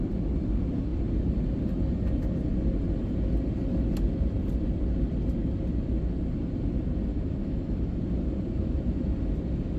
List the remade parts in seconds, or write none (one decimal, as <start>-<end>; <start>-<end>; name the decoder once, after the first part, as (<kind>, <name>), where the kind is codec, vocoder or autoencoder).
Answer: 7.1-7.9 (autoencoder, DAC-VAE)